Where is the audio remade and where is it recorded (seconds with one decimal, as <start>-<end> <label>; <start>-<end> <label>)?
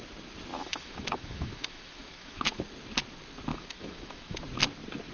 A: 0.0-0.5 recorded; 0.5-2.6 remade; 2.6-3.5 recorded; 3.5-4.4 remade; 4.4-5.1 recorded